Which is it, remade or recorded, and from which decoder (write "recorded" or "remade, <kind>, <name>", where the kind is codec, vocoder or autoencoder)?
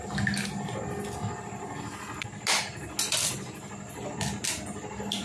recorded